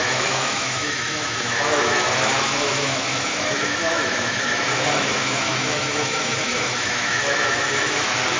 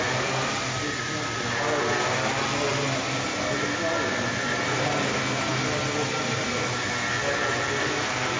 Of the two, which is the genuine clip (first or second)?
second